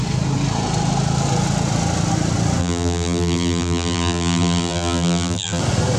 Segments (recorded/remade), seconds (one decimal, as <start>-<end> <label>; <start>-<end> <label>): 0.0-2.6 recorded; 2.6-5.6 remade; 5.6-6.0 recorded